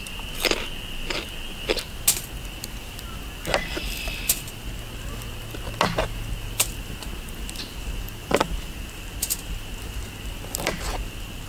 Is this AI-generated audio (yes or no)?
no